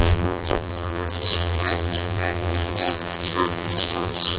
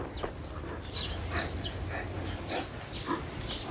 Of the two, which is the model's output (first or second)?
first